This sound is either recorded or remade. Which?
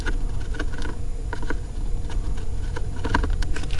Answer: recorded